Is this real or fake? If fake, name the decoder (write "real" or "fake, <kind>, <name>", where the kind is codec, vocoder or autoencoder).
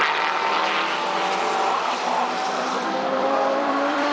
fake, vocoder, BigVGAN v2